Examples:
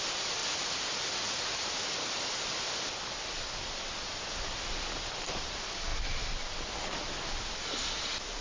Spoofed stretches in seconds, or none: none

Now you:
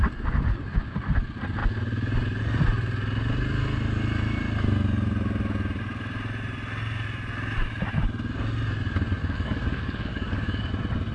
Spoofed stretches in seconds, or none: 9.2-10.7 (codec, DAC)

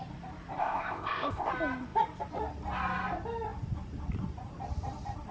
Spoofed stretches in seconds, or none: 0.6-1.5 (codec, ZipCodec)

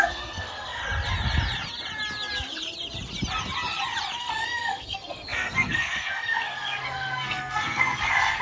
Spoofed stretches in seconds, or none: 0.0-0.8 (codec, SNAC); 4.2-8.4

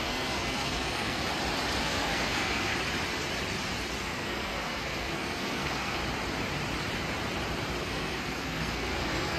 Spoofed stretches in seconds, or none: 0.0-1.2 (codec, SNAC); 1.8-2.7; 4.0-6.0; 7.8-9.4